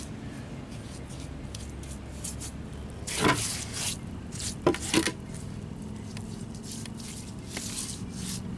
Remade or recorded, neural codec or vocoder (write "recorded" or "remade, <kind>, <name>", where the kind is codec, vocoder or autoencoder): recorded